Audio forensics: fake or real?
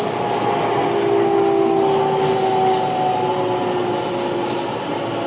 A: real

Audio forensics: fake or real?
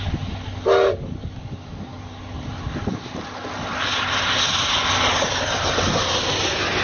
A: real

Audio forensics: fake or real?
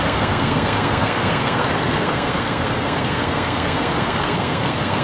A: fake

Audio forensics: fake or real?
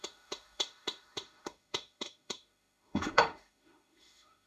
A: fake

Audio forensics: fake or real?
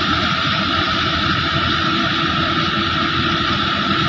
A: real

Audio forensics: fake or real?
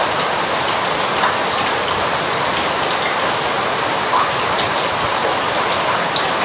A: real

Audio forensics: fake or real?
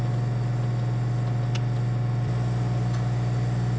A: real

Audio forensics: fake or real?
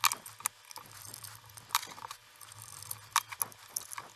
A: real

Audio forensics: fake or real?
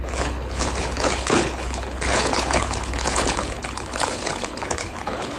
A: fake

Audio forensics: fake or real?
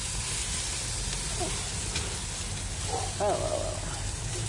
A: real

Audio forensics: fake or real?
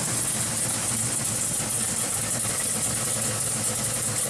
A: real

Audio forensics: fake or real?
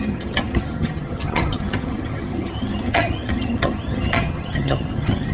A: fake